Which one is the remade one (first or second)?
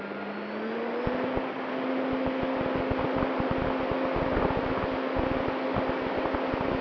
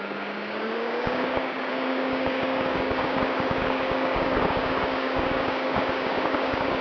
second